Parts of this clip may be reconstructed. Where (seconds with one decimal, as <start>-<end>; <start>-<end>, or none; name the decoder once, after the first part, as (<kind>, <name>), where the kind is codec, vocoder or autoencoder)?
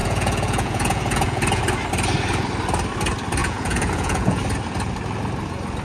0.0-1.6 (vocoder, Vocos); 3.4-4.4